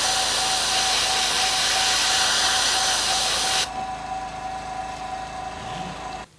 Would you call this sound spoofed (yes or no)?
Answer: no